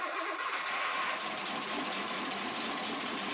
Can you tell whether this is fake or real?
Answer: fake